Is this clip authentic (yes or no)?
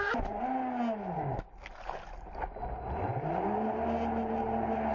yes